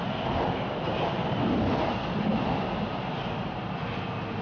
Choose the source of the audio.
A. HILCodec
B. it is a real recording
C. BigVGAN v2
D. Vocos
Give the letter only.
B